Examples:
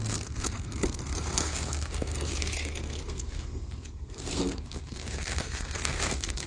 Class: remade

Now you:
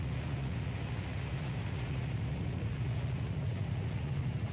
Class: remade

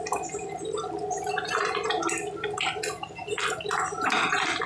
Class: recorded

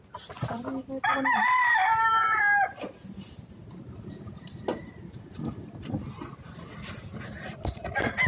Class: recorded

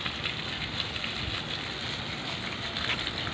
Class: recorded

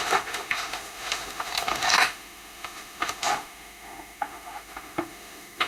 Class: remade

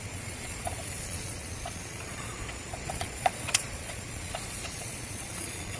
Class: remade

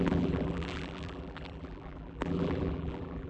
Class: remade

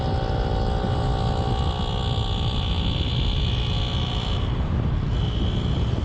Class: recorded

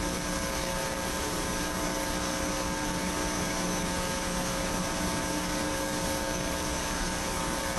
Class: remade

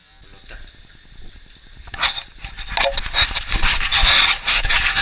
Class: recorded